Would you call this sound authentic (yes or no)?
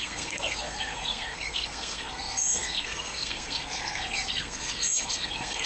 no